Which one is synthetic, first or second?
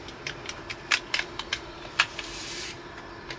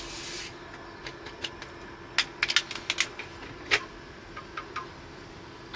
first